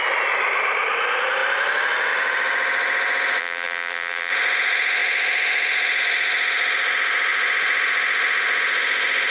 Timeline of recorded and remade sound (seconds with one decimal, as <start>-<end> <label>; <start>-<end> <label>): 0.0-3.4 recorded; 3.4-4.3 remade; 4.3-9.3 recorded